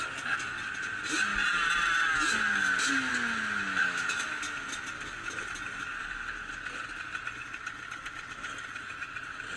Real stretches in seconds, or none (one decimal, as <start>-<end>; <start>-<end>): 0.0-3.8; 4.4-9.6